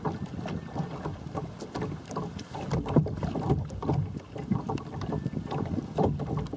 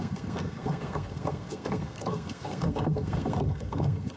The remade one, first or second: second